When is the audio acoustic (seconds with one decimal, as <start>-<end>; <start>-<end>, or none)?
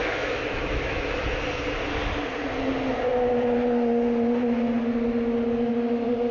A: 1.3-6.3